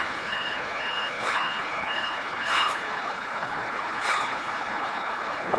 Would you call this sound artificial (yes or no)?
yes